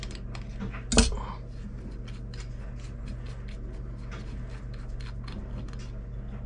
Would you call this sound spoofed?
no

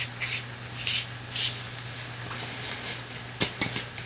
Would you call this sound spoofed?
no